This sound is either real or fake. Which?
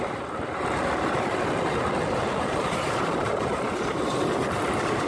real